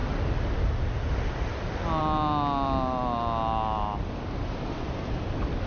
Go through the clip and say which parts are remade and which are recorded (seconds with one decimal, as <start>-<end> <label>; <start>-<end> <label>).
0.0-5.7 recorded